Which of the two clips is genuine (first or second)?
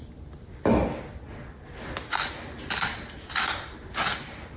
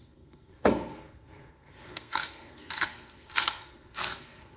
first